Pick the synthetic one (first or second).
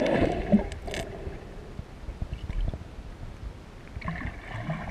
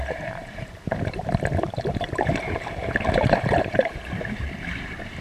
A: second